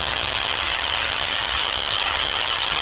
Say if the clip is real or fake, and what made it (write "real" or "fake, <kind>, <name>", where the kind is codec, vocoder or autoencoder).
fake, vocoder, HiFi-GAN